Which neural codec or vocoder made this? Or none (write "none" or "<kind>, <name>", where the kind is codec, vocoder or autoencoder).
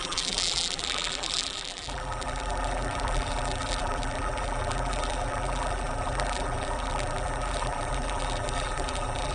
vocoder, BigVGAN v2